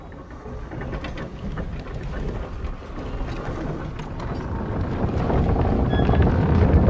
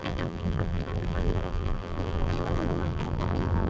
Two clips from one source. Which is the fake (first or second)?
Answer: second